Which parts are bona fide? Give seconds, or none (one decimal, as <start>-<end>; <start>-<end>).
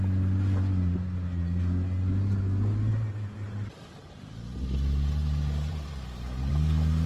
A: 0.0-2.9; 3.7-5.7; 6.5-7.1